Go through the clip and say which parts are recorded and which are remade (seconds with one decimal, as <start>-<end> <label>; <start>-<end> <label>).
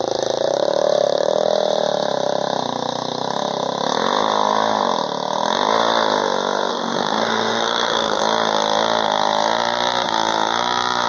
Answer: 0.0-6.7 recorded; 6.7-8.2 remade; 8.2-11.1 recorded